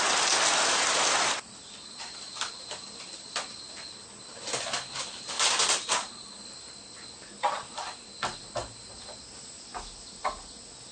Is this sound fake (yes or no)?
no